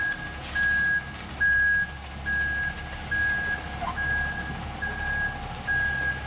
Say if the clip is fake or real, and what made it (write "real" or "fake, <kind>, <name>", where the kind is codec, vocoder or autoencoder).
real